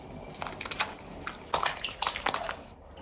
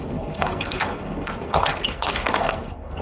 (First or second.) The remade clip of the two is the second